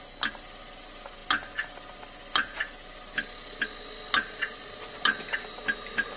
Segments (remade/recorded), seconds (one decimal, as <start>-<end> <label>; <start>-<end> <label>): 0.0-6.2 recorded